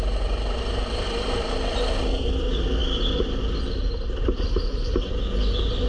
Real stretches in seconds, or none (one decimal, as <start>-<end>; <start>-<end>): 0.0-5.9